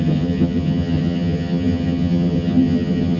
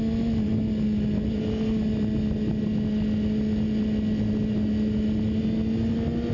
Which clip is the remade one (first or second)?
first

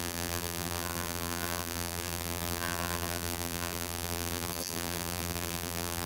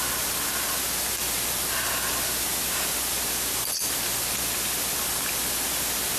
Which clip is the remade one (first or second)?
first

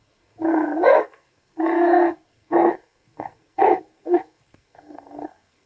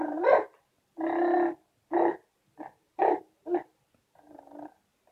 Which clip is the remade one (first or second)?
first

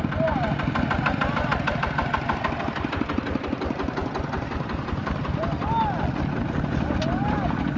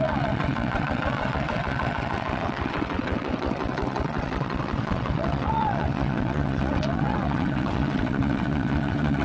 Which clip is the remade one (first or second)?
second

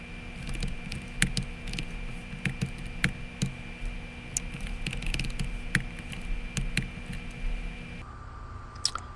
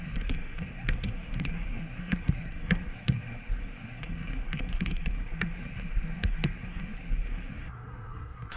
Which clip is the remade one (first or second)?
second